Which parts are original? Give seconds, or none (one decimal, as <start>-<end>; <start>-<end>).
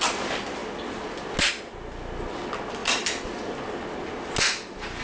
0.0-5.0